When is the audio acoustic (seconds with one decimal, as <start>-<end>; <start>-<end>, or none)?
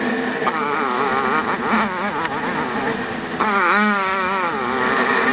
1.1-3.4